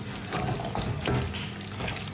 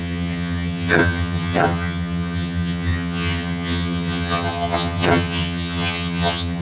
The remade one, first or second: second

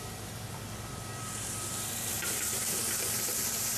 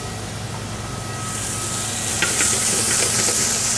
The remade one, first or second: first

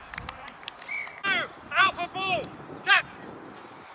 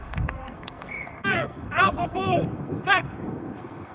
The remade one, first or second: second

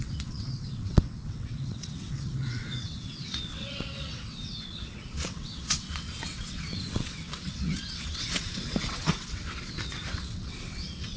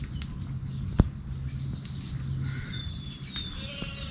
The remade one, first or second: first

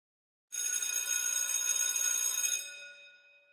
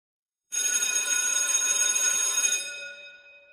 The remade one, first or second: second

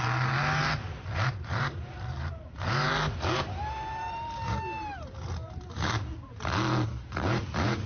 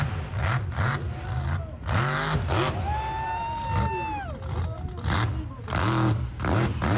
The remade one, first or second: first